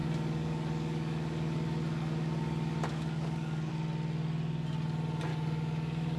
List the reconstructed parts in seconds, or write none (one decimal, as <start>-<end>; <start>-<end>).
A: 0.0-3.7; 5.3-6.2